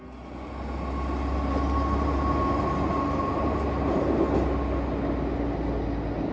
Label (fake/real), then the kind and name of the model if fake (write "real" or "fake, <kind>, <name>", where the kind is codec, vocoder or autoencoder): real